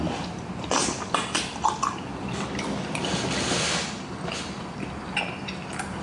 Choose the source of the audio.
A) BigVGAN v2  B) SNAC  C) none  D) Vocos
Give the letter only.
C